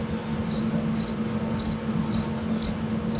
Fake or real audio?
real